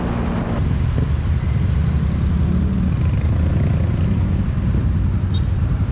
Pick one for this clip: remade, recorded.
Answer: recorded